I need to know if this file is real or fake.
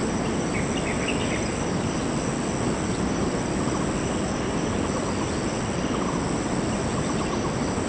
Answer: real